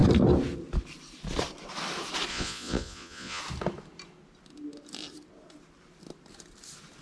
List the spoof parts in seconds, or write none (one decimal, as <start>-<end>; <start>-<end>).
2.3-3.4

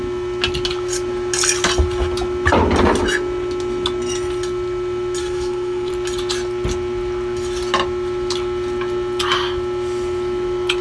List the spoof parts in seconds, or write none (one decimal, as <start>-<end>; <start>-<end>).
5.2-5.9

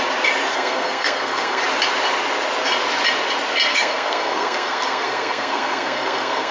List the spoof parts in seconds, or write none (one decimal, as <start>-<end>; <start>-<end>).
0.5-1.6; 3.7-6.5

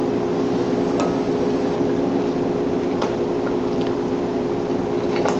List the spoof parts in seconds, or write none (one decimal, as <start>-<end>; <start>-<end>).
none

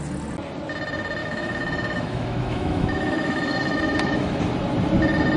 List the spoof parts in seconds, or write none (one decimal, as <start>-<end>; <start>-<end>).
1.2-4.4

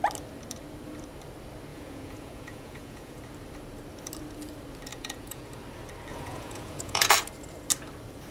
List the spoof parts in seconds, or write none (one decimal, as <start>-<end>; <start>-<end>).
1.7-3.2; 4.9-5.5; 6.1-7.1